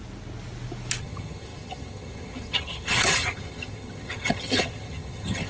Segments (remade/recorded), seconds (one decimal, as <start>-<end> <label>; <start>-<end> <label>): 0.0-1.0 recorded; 1.0-5.5 remade

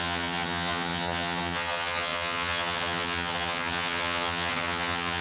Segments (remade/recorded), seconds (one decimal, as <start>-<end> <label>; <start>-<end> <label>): 0.0-5.2 remade

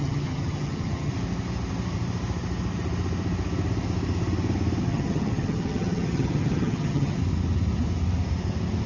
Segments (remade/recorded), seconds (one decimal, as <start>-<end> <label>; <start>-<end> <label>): 0.0-1.1 remade; 1.1-4.8 recorded; 4.8-7.2 remade; 7.2-8.9 recorded

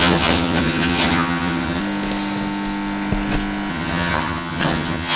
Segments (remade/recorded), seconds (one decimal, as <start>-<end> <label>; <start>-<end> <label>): 0.0-1.8 remade; 1.8-3.7 recorded; 3.7-5.2 remade